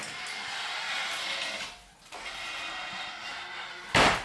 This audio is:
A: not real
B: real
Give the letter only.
B